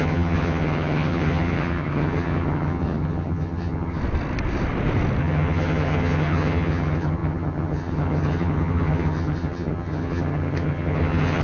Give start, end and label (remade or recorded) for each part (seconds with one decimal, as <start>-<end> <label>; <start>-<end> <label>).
0.0-4.0 remade; 4.0-5.2 recorded; 5.2-11.4 remade